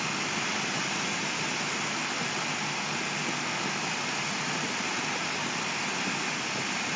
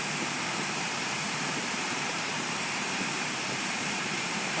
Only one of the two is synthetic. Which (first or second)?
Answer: second